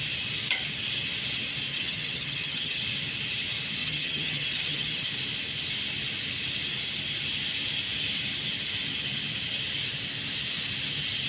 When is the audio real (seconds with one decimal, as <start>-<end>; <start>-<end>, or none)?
0.0-1.7; 2.8-3.8; 5.1-11.3